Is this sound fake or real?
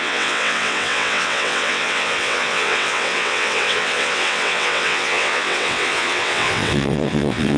fake